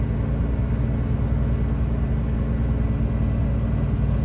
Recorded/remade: recorded